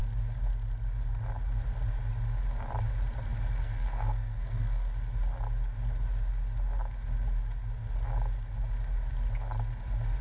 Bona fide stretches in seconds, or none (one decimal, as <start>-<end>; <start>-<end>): 0.0-3.6; 4.9-10.2